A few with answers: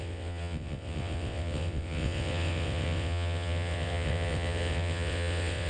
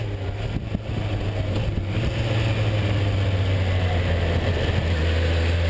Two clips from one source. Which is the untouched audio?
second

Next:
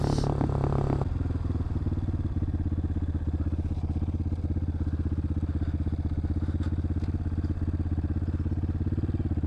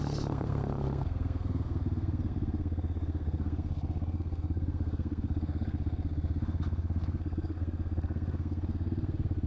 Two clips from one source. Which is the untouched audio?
first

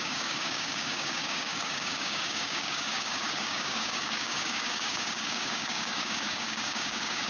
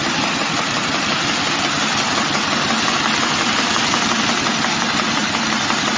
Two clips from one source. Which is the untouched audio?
second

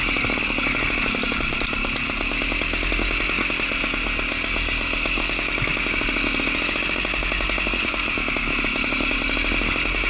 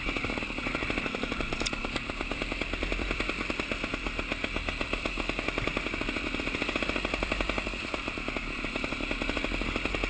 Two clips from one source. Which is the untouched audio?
first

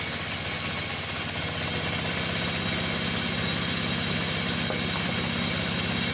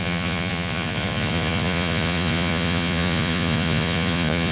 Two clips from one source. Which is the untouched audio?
first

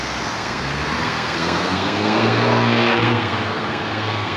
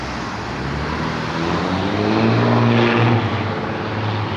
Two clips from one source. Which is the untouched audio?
second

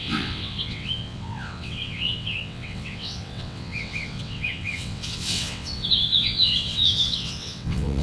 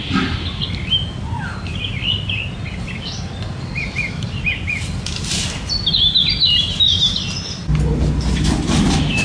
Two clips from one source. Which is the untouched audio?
second